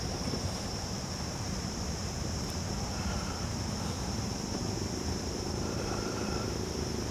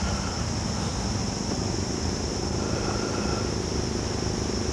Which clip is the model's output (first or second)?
first